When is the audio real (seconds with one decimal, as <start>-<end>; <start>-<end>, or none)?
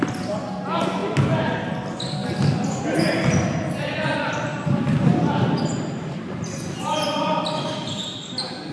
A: 0.0-8.7